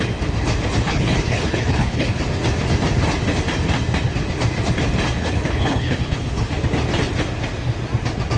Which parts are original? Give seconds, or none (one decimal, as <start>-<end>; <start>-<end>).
0.0-0.8; 2.2-5.2; 6.5-8.4